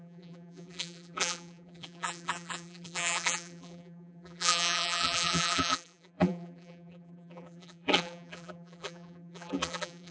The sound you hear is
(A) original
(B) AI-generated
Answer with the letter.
B